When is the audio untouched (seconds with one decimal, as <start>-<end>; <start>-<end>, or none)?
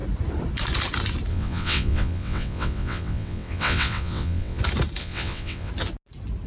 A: 0.0-1.3; 4.6-5.0; 5.7-6.5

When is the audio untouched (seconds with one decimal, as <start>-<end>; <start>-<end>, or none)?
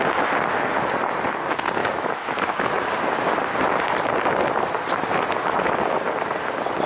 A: 0.0-1.8; 2.5-6.9